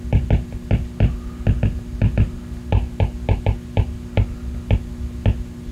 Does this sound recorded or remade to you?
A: recorded